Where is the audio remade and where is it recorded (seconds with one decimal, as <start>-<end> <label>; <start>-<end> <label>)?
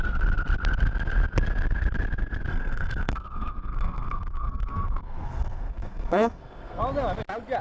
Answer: 0.0-2.5 recorded; 2.5-6.8 remade; 6.8-7.6 recorded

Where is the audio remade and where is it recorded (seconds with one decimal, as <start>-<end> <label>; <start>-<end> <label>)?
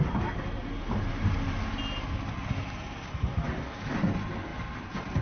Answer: 0.0-4.5 recorded; 4.5-5.2 remade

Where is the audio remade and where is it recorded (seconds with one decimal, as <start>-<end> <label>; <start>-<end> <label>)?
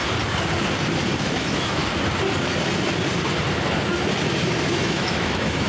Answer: 0.0-1.2 recorded; 1.2-1.8 remade; 1.8-4.7 recorded; 4.7-5.7 remade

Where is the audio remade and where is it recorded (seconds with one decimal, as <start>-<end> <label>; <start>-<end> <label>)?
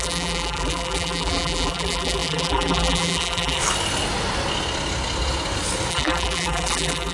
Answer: 0.0-3.6 remade; 3.6-5.9 recorded; 5.9-7.1 remade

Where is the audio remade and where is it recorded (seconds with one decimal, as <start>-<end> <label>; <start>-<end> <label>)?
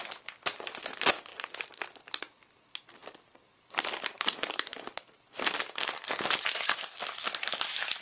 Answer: 0.0-1.3 recorded; 1.3-1.8 remade; 1.8-3.0 recorded; 3.0-4.7 remade; 4.7-8.0 recorded